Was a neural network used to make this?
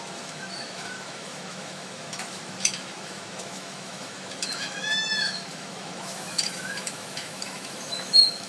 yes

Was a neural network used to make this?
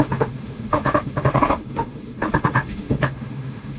yes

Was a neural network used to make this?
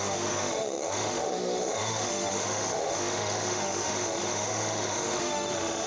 yes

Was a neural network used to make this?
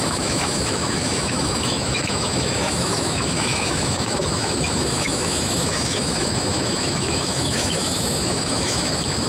yes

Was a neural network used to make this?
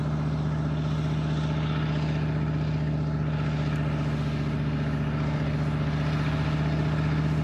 no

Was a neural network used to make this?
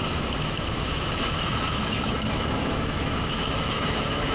yes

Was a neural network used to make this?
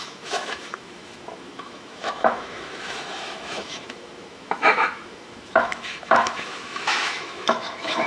yes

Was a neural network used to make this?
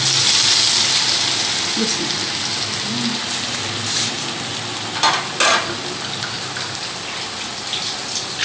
no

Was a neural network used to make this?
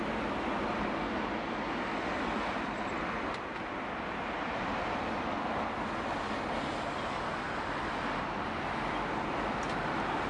no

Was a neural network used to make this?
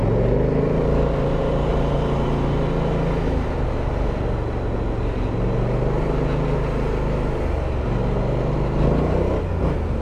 no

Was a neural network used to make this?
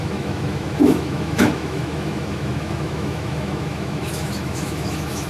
yes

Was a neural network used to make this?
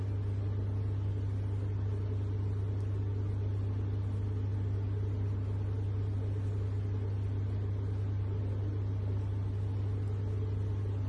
no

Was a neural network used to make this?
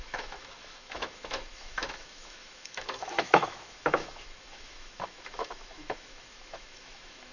yes